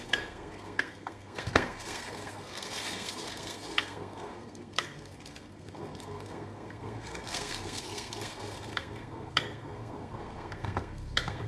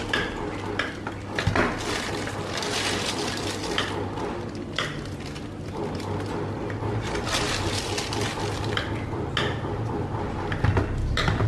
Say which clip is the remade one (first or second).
first